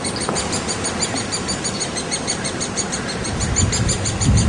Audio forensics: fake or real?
fake